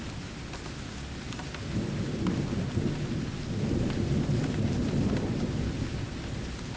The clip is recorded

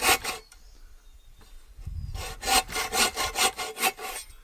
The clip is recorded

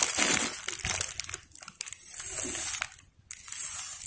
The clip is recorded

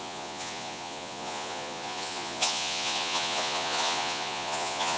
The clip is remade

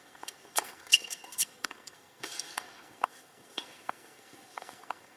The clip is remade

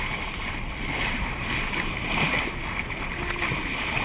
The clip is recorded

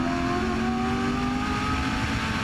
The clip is recorded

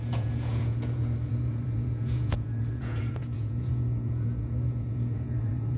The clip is remade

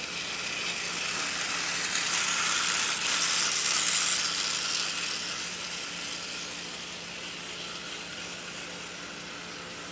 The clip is recorded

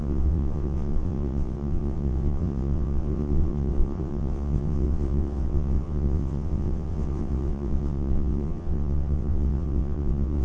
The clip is remade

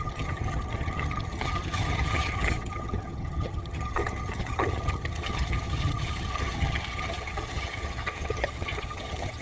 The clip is remade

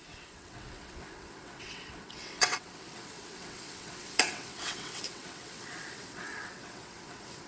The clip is remade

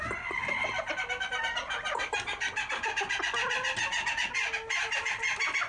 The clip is recorded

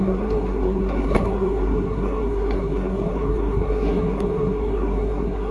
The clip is remade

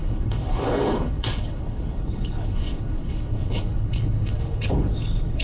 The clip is remade